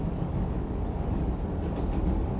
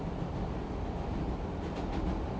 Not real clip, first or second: first